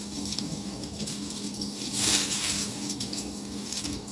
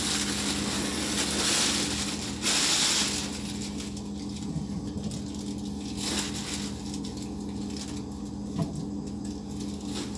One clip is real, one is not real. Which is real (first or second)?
second